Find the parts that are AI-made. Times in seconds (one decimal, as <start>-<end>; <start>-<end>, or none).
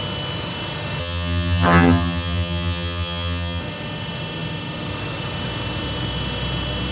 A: 1.0-3.6